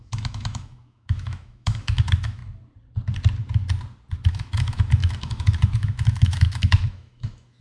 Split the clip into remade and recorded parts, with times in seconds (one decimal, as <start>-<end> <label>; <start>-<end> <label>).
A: 0.0-2.4 remade; 2.4-4.3 recorded; 4.3-7.6 remade